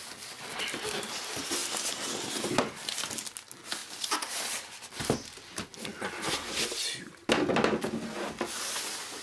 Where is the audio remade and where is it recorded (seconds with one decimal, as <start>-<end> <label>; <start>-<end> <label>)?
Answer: 0.0-9.2 recorded